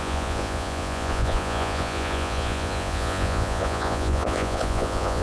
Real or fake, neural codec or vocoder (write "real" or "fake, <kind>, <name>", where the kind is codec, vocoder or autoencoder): fake, vocoder, Vocos